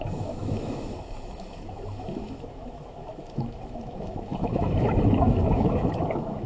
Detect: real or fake fake